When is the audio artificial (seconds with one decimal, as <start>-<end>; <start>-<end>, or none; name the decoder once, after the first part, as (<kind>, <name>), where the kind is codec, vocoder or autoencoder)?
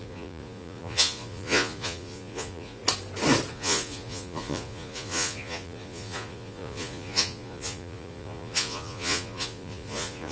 0.0-2.8 (vocoder, Vocos); 3.5-10.3